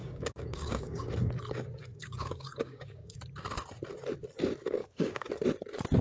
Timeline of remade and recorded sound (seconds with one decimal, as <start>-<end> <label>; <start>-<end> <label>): 0.0-1.1 remade; 1.1-1.9 recorded; 1.9-3.2 remade; 3.2-4.8 recorded; 4.8-5.3 remade; 5.3-6.0 recorded